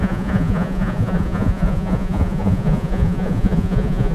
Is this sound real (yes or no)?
no